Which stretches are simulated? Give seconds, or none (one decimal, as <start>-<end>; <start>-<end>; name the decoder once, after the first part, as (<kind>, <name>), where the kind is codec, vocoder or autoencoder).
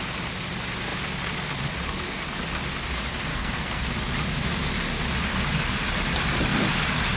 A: 3.3-3.9 (codec, SNAC)